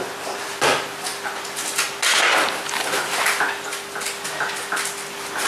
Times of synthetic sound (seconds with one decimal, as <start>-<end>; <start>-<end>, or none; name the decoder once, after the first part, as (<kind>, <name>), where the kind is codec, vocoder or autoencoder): none